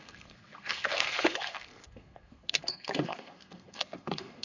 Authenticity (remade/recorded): remade